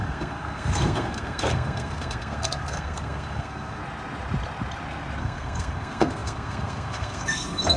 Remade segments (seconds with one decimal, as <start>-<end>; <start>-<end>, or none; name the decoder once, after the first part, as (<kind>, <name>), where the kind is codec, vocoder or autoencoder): 0.0-3.8 (codec, SNAC); 5.2-7.8